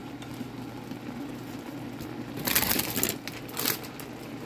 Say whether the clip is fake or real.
real